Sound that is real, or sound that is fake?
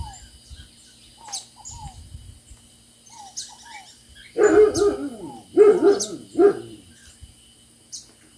real